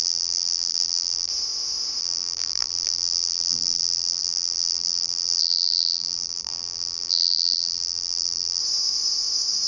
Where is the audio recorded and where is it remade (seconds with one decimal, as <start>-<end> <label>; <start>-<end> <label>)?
0.0-1.3 remade; 1.3-2.0 recorded; 2.0-8.6 remade; 8.6-9.7 recorded

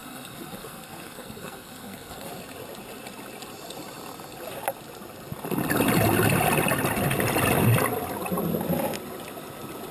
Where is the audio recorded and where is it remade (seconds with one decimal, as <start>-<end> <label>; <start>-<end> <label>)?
0.0-2.3 remade; 2.3-9.9 recorded

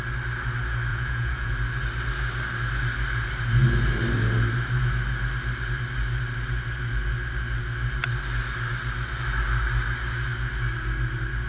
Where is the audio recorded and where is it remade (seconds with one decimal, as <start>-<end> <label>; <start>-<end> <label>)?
0.0-0.9 recorded; 0.9-1.5 remade; 1.5-11.5 recorded

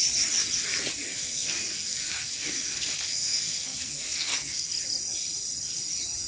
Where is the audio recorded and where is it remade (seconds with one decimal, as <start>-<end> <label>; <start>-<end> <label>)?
0.0-1.1 recorded; 1.1-4.7 remade; 4.7-6.3 recorded

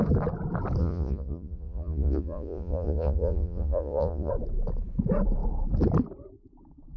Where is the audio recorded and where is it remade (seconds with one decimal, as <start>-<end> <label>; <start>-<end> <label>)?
0.0-0.8 recorded; 0.8-4.3 remade; 4.3-7.0 recorded

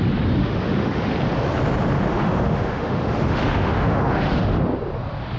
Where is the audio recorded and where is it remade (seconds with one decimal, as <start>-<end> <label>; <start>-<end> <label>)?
0.0-0.4 recorded; 0.4-1.1 remade; 1.1-2.1 recorded; 2.1-4.6 remade; 4.6-5.4 recorded

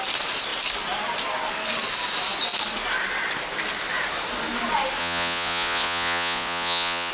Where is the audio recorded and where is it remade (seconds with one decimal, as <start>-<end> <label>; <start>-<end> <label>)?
0.0-5.0 recorded; 5.0-7.1 remade

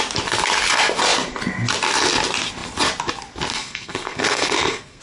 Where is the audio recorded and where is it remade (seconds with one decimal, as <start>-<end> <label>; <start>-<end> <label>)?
0.0-3.5 recorded; 3.5-5.0 remade